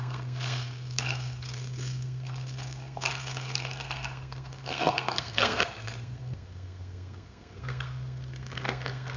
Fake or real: fake